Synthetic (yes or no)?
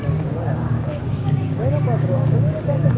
yes